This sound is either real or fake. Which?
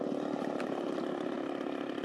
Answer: real